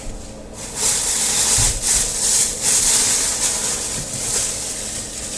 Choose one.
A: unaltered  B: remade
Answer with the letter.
A